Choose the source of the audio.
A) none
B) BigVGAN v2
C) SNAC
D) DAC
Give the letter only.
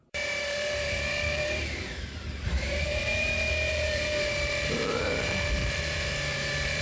B